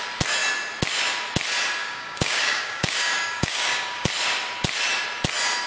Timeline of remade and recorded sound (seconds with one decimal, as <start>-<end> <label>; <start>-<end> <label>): 0.0-1.8 recorded; 1.8-4.1 remade; 4.1-5.7 recorded